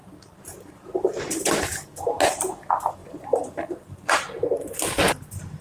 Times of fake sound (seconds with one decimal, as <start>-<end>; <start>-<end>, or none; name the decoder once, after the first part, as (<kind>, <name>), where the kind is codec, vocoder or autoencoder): 0.0-2.0 (vocoder, BigVGAN v2); 3.0-4.1